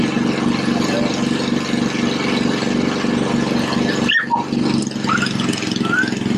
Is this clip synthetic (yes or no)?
no